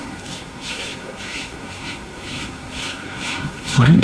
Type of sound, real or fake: fake